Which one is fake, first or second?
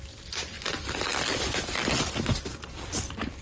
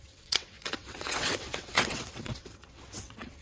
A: second